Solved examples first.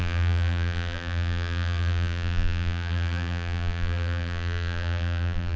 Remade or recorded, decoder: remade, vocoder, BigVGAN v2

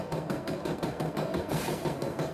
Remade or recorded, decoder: remade, codec, SNAC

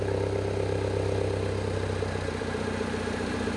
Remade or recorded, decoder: remade, vocoder, BigVGAN v2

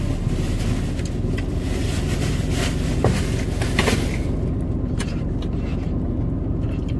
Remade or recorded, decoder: recorded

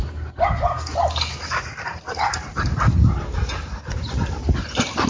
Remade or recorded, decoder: recorded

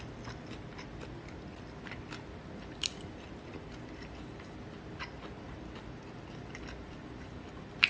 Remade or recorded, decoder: recorded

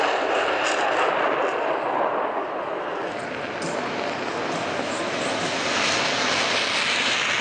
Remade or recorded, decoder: recorded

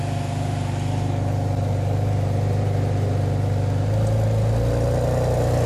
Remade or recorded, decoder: recorded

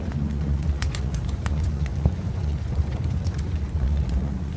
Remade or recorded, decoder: remade, vocoder, Vocos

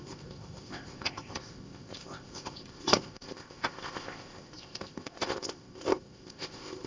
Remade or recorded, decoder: remade, codec, ZipCodec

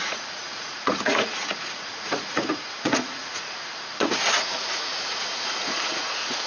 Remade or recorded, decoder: remade, vocoder, Vocos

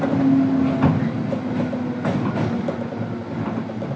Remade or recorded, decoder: recorded